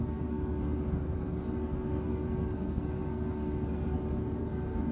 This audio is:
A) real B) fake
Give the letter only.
B